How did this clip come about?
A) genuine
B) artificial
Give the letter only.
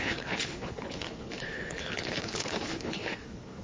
B